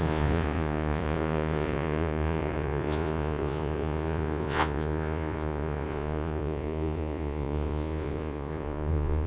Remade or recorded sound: remade